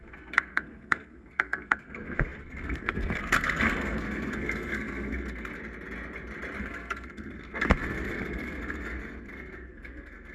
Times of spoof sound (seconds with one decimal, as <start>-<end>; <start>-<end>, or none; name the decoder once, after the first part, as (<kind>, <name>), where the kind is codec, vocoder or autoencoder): 0.0-5.5 (codec, SNAC); 6.6-10.3